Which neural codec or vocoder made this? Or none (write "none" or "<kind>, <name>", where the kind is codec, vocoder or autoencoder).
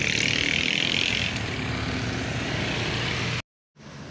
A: none